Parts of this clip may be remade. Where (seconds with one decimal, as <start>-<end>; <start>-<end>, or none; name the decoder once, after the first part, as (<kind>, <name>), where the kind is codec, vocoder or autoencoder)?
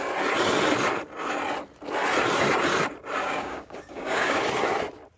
3.2-4.4 (codec, DAC)